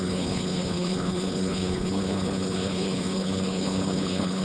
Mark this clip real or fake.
fake